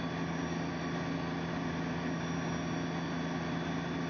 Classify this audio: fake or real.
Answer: real